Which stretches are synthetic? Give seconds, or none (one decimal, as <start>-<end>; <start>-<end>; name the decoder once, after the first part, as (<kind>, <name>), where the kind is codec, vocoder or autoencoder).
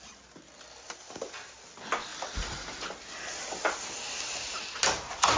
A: none